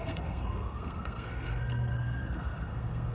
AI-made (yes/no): yes